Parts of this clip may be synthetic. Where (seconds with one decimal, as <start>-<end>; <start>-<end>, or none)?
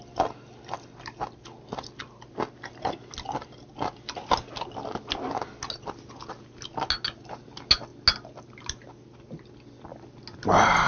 none